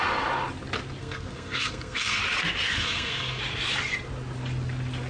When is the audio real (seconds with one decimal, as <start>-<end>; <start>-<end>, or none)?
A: 0.0-1.0; 2.2-2.7; 3.4-5.1